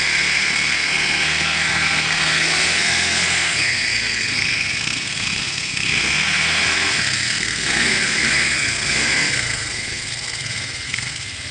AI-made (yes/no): yes